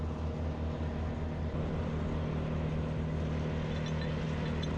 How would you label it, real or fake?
real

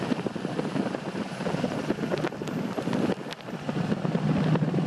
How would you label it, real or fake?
real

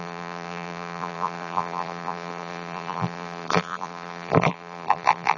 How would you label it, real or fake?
fake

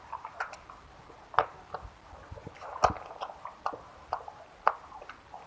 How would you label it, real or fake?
real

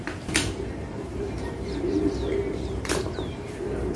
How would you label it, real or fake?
fake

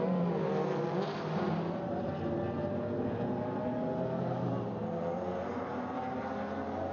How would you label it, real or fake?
real